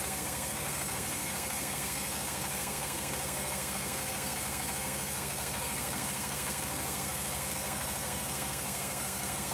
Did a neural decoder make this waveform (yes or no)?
yes